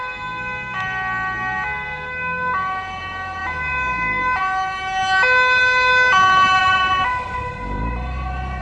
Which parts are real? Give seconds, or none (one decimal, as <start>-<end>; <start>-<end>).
0.0-6.6